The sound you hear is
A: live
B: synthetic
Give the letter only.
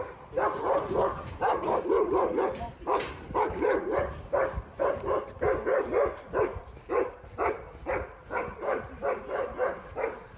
B